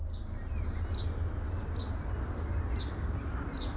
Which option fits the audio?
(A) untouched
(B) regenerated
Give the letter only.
A